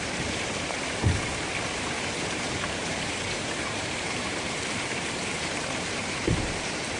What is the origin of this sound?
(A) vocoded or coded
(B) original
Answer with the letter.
A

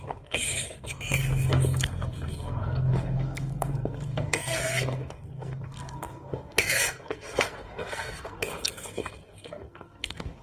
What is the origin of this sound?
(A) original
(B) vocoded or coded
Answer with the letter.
B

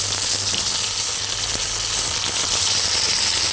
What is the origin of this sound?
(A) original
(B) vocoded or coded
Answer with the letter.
A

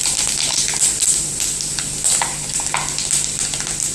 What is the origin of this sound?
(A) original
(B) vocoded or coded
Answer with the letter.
A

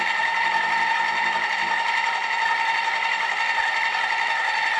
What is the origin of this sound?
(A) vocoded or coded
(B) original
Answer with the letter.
A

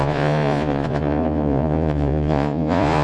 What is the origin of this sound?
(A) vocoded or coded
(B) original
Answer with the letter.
A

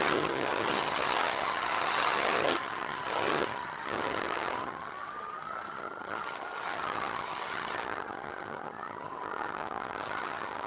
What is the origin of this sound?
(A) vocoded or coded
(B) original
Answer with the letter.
A